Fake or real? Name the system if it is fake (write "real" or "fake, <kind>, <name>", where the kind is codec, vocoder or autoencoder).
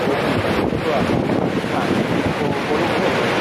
real